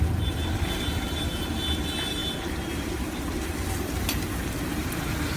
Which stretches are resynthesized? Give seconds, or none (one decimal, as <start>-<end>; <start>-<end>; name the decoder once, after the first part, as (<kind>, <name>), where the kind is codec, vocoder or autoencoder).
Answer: 2.2-5.4 (vocoder, BigVGAN v2)